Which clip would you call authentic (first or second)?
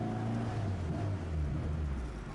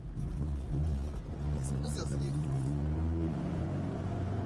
first